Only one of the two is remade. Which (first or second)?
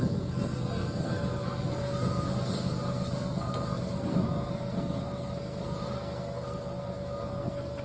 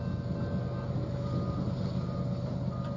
first